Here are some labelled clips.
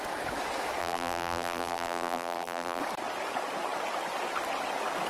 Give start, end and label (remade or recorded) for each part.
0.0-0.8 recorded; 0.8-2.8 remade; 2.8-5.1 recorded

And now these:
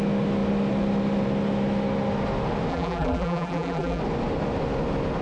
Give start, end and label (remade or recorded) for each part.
0.0-2.7 recorded; 2.7-4.0 remade; 4.0-5.2 recorded

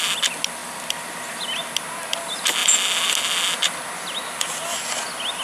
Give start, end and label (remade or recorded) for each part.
0.0-0.6 recorded; 0.6-1.7 remade; 1.7-5.4 recorded